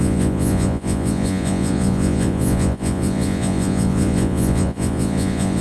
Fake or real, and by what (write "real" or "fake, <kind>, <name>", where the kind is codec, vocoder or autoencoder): fake, vocoder, Vocos